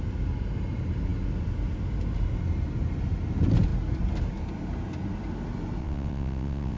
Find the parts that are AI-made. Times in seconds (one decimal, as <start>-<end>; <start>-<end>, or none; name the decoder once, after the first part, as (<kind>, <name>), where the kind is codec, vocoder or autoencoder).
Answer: 5.8-6.8 (vocoder, WaveNeXt)